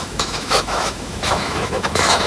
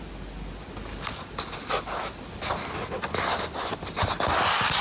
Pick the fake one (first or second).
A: first